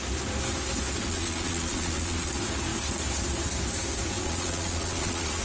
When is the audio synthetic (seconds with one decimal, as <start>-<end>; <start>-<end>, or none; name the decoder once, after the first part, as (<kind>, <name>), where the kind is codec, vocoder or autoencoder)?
1.1-2.3 (vocoder, Vocos); 4.2-5.4